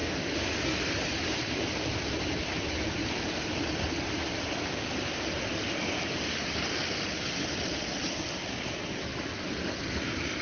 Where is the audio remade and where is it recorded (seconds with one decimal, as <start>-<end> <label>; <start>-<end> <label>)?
0.0-10.4 recorded